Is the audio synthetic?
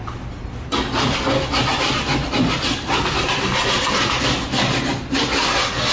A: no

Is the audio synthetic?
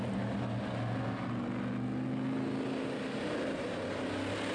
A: no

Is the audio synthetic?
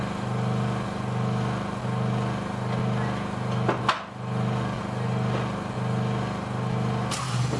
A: no